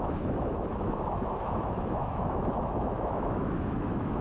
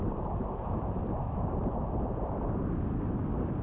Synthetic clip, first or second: first